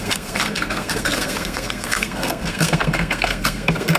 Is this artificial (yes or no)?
yes